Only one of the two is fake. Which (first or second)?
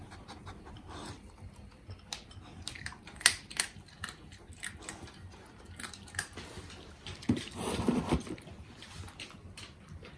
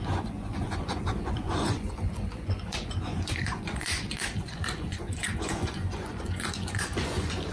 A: second